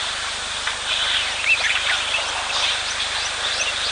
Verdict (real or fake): real